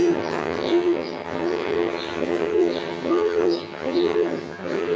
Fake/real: fake